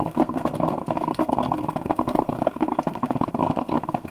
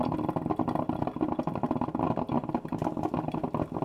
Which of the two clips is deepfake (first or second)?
first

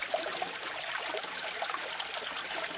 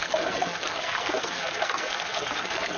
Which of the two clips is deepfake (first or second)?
second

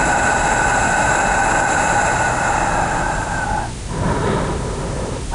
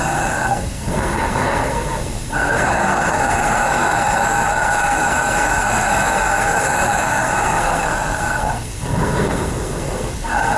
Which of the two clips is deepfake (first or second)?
second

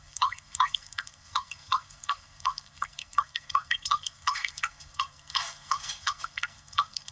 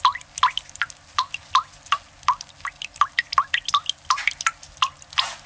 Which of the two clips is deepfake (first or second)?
first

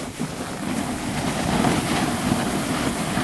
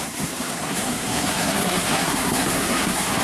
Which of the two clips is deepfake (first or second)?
second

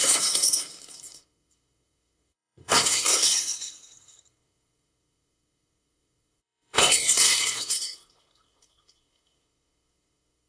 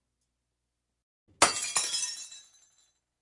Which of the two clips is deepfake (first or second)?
first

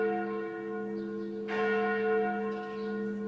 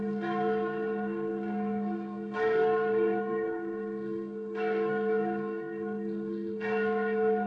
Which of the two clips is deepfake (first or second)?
second